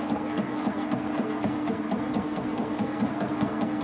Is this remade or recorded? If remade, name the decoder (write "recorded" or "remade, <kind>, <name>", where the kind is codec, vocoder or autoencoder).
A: remade, codec, SNAC